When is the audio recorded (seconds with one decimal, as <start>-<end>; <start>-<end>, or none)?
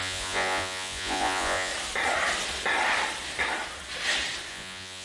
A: 1.7-4.5